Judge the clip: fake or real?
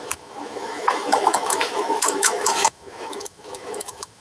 fake